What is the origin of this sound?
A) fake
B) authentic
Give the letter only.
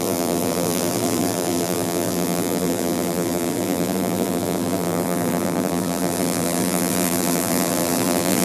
A